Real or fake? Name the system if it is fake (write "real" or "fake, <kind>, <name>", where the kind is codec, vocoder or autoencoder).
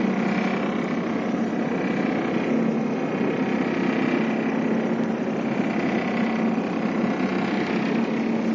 real